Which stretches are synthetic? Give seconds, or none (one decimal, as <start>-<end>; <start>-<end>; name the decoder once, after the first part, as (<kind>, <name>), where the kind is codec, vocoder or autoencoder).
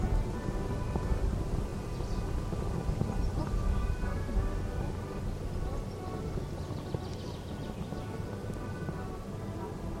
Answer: 1.7-2.2 (vocoder, BigVGAN v2)